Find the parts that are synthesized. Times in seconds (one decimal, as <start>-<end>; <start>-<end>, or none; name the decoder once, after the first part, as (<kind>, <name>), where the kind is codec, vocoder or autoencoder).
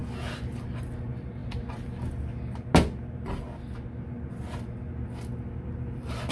none